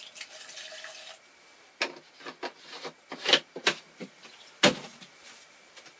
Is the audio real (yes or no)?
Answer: yes